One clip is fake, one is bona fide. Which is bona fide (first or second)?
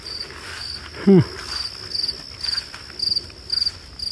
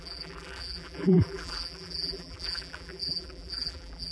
first